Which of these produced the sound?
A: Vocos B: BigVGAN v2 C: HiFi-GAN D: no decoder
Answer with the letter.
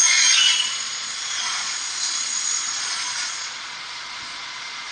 A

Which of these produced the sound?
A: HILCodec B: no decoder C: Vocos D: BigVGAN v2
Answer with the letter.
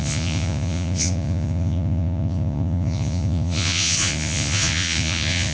C